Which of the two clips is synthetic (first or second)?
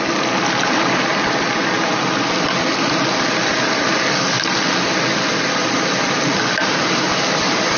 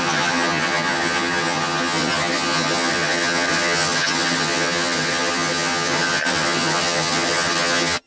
second